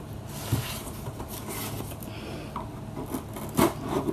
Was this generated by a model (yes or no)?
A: no